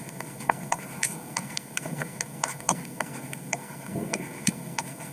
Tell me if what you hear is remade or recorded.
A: remade